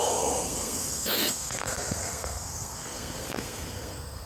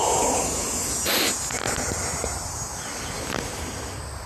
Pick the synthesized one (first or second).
first